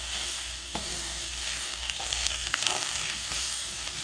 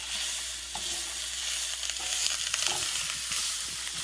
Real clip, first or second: second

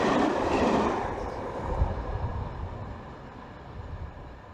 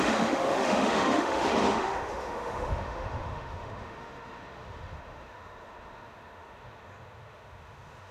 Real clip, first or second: first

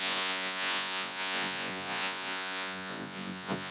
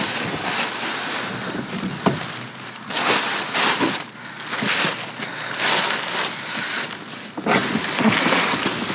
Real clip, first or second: second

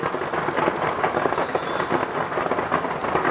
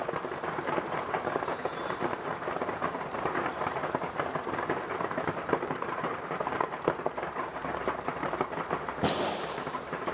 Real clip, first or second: first